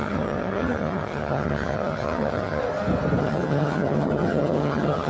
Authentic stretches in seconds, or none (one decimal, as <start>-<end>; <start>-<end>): 2.6-3.2